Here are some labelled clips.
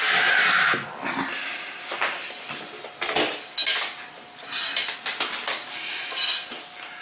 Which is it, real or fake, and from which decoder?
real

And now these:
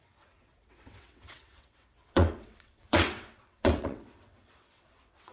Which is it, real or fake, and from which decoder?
fake, vocoder, WaveNeXt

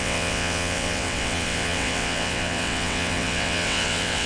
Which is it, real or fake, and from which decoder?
fake, vocoder, WaveNeXt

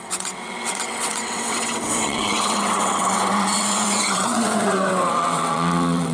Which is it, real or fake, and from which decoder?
fake, vocoder, WaveNeXt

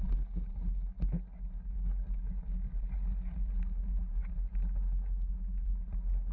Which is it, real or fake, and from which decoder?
real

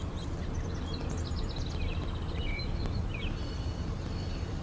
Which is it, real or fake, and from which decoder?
real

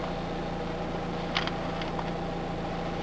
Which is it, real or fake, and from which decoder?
real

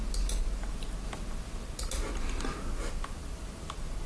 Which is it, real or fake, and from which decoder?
real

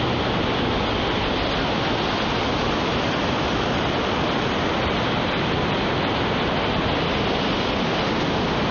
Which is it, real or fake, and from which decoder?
real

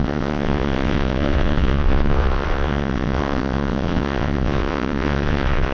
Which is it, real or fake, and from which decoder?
fake, vocoder, WaveNeXt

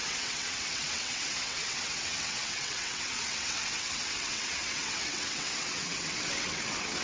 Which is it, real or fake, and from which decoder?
fake, vocoder, WaveNeXt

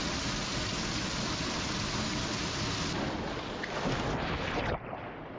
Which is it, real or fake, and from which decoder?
real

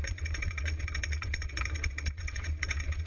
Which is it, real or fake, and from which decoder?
fake, vocoder, WaveNeXt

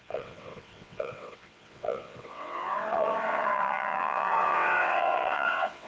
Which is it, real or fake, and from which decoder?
fake, vocoder, WaveNeXt